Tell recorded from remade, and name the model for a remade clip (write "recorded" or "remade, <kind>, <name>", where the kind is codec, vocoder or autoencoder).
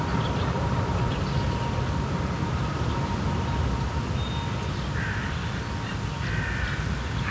recorded